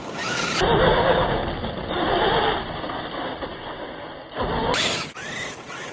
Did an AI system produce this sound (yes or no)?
no